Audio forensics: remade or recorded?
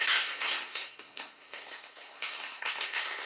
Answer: remade